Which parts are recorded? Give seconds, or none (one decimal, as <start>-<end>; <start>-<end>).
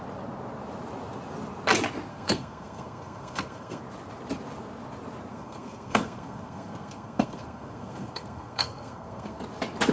0.0-2.1; 3.8-5.3; 9.4-9.9